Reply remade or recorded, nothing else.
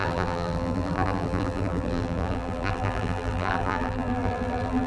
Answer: remade